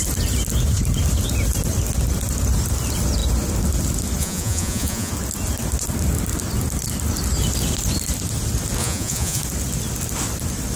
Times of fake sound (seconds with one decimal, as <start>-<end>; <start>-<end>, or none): 4.2-5.1; 8.8-9.4